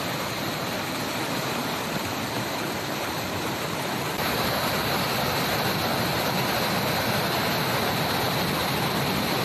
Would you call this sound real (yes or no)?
yes